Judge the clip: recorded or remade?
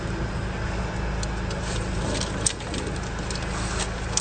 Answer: recorded